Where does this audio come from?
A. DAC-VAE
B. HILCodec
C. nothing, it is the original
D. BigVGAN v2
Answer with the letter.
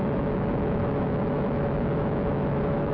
A